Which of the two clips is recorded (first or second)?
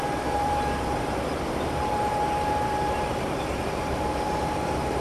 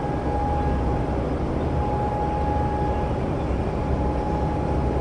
second